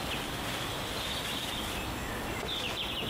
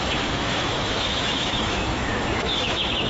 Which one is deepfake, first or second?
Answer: second